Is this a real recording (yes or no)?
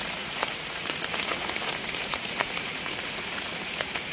no